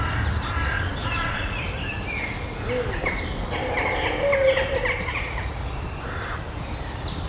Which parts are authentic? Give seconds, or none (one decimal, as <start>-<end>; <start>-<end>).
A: 0.0-1.0; 1.6-5.1; 5.7-7.3

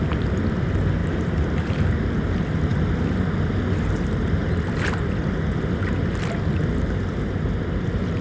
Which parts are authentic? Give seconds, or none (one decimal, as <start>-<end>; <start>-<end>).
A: 0.0-1.0; 2.0-8.2